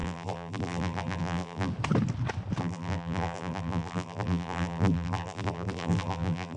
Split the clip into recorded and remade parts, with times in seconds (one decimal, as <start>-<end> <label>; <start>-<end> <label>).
0.0-1.7 remade; 1.7-2.6 recorded; 2.6-6.6 remade